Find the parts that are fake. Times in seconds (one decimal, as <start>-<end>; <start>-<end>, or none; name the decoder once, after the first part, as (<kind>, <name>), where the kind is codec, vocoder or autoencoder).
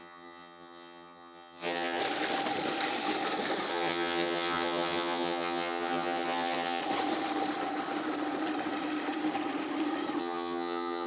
0.0-2.0 (vocoder, HiFi-GAN); 3.7-6.8; 10.2-11.1